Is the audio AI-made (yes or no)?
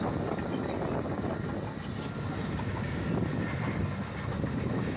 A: no